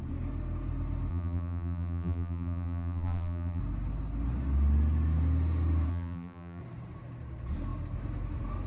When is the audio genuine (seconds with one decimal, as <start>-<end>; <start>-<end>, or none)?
0.0-1.1; 3.6-5.9; 6.6-8.7